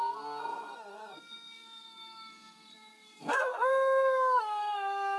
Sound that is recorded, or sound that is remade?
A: remade